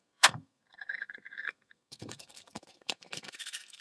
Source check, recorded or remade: remade